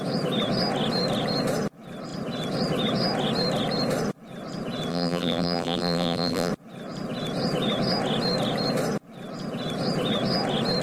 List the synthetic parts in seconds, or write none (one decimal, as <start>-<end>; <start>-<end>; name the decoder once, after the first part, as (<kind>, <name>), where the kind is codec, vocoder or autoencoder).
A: 4.9-6.5 (vocoder, BigVGAN v2)